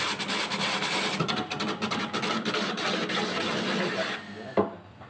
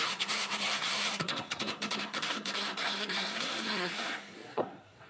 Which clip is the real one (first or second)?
first